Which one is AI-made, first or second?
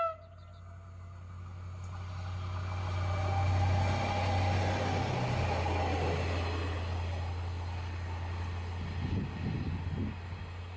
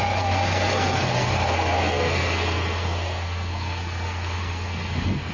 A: second